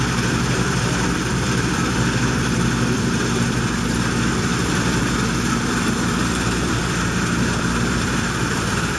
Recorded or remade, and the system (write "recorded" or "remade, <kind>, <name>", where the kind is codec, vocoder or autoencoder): remade, vocoder, BigVGAN v2